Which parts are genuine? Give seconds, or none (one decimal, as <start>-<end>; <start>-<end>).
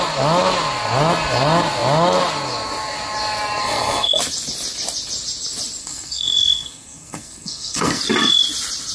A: 0.0-3.6; 4.2-5.8; 8.0-8.9